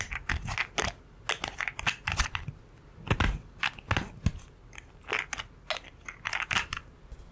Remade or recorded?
recorded